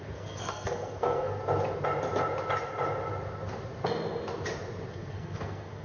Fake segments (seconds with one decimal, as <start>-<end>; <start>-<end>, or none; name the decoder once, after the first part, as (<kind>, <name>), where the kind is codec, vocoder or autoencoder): 0.0-1.4 (codec, SNAC); 4.9-5.8